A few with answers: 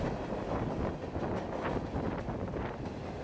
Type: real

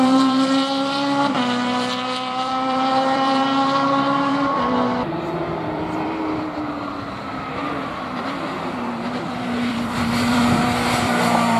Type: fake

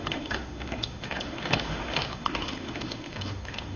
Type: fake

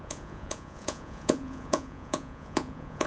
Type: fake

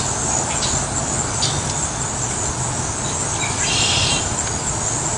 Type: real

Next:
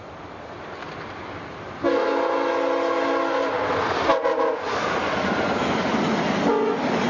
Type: real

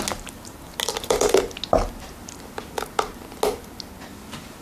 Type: real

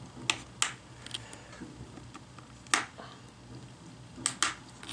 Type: real